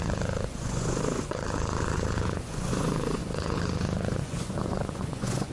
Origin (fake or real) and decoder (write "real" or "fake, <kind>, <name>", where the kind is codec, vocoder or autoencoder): fake, vocoder, Vocos